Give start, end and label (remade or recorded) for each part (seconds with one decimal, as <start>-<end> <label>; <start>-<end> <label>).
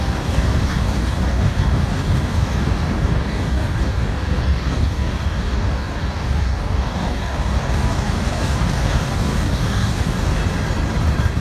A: 0.0-10.4 remade; 10.4-11.4 recorded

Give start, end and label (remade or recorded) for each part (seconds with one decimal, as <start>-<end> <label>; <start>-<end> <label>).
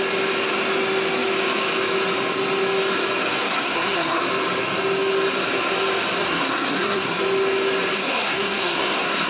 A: 0.0-3.4 recorded; 3.4-4.2 remade; 4.2-6.2 recorded; 6.2-7.2 remade; 7.2-7.9 recorded; 7.9-9.3 remade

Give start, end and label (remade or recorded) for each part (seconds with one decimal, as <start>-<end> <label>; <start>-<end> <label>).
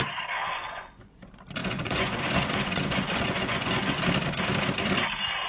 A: 0.0-0.4 recorded; 0.4-1.2 remade; 1.2-1.6 recorded; 1.6-4.0 remade; 4.0-5.5 recorded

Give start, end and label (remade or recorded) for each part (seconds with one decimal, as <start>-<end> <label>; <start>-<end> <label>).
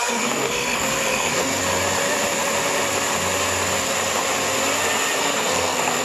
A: 0.0-1.6 remade; 1.6-5.2 recorded; 5.2-6.0 remade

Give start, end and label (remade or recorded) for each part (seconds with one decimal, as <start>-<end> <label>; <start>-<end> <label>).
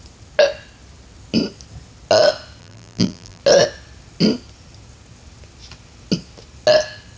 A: 0.0-2.6 recorded; 2.6-3.4 remade; 3.4-7.2 recorded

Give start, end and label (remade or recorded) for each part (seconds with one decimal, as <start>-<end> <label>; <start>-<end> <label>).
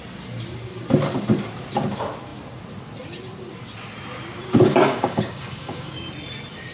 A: 0.0-4.7 recorded; 4.7-5.9 remade; 5.9-6.7 recorded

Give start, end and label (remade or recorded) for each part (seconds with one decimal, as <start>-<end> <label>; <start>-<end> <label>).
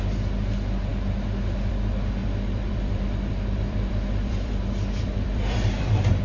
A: 0.0-2.2 recorded; 2.2-6.2 remade